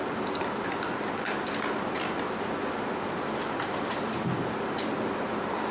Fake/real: real